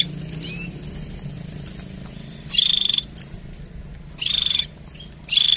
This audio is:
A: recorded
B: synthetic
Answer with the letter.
A